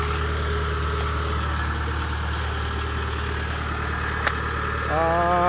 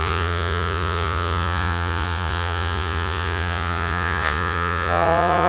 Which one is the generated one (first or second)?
second